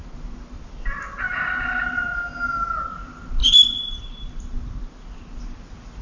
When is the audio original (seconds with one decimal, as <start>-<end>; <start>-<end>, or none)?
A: 0.0-3.4; 4.0-6.0

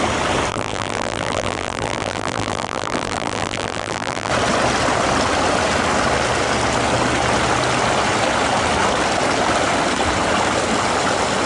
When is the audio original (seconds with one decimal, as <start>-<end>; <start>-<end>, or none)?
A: 0.0-0.5; 4.3-11.5

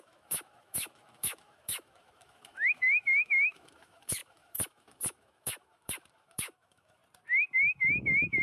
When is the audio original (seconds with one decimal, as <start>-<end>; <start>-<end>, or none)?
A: 7.0-7.5

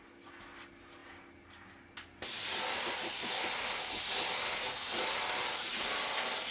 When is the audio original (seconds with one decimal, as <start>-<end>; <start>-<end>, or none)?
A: 0.0-6.5

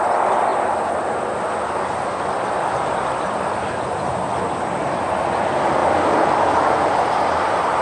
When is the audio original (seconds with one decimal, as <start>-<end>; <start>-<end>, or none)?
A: 0.0-7.8

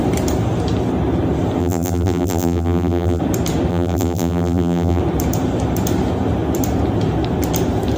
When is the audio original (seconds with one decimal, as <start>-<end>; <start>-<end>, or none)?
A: 0.0-1.6; 3.2-3.7; 5.0-8.0

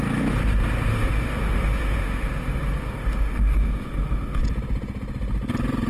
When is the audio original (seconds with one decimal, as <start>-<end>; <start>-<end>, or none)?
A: 0.0-0.9; 4.4-5.9